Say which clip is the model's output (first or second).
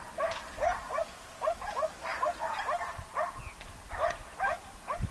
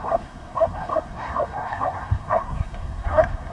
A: second